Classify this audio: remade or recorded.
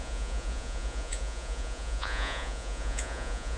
remade